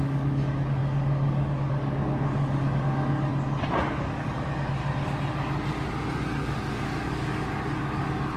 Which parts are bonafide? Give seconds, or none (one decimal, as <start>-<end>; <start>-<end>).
3.3-3.9; 4.8-6.2